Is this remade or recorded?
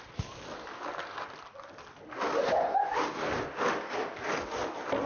recorded